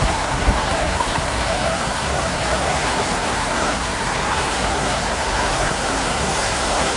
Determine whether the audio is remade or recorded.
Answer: remade